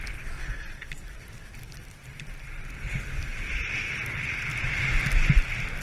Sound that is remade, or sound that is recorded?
recorded